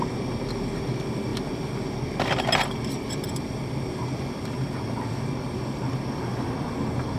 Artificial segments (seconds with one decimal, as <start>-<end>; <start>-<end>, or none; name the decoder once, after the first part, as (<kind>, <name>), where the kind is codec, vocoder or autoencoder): none